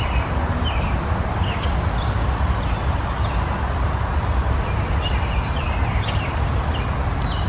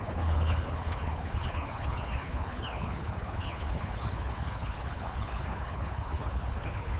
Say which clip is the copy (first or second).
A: second